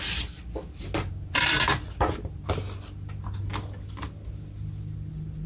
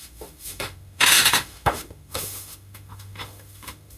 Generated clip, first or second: second